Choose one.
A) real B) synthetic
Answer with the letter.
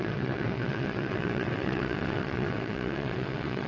B